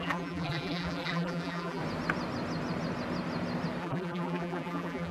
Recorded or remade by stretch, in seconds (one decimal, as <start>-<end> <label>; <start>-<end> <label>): 0.0-1.8 remade; 1.8-3.8 recorded; 3.8-5.1 remade